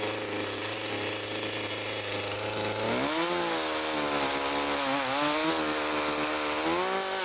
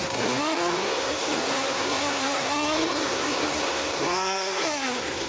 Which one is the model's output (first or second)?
second